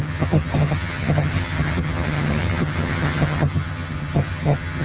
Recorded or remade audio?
remade